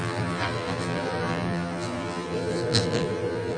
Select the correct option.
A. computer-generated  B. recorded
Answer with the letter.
A